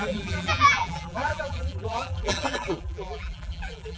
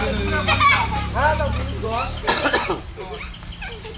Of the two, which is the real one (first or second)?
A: second